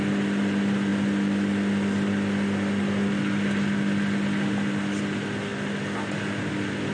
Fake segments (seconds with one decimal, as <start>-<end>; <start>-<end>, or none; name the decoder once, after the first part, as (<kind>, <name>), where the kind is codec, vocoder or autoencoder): none